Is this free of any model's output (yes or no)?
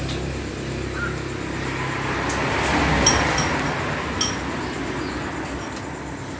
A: yes